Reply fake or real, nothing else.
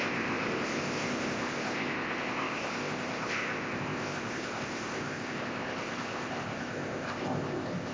fake